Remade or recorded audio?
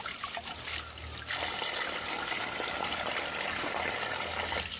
remade